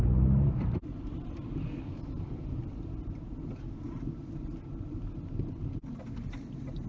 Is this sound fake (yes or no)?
no